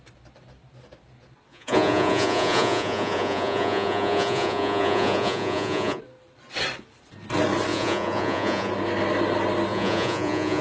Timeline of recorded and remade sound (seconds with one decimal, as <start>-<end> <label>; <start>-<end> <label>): 0.0-1.5 recorded; 1.5-6.0 remade; 6.0-7.7 recorded; 7.7-8.7 remade; 8.7-9.7 recorded; 9.7-10.6 remade